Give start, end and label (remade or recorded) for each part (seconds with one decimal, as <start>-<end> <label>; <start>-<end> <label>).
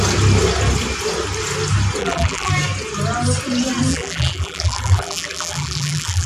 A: 0.0-2.0 recorded; 2.0-2.5 remade; 2.5-3.9 recorded; 3.9-6.3 remade